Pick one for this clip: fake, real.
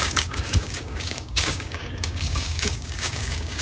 fake